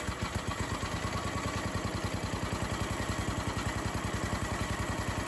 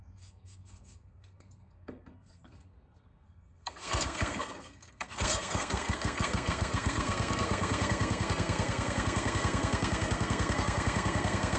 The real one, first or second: first